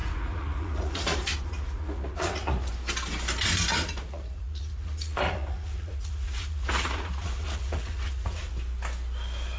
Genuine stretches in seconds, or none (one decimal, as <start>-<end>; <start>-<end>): 2.7-3.7; 8.5-9.6